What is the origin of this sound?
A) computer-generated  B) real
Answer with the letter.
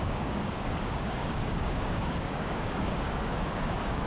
A